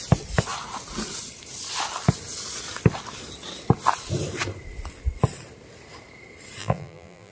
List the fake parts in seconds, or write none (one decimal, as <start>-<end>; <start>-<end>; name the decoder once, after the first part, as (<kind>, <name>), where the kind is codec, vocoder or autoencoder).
6.6-7.3 (vocoder, BigVGAN v2)